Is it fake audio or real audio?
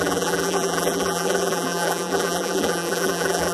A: fake